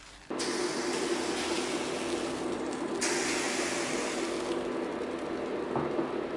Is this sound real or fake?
real